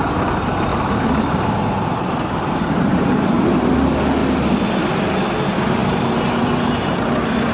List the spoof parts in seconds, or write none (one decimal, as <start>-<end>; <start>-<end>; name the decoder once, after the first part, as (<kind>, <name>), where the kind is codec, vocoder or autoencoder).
0.7-3.7 (vocoder, BigVGAN v2); 4.2-5.2; 5.8-7.5